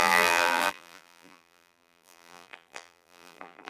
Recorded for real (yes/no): no